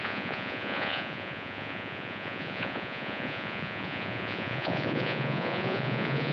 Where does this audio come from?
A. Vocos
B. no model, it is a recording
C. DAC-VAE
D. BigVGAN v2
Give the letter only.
A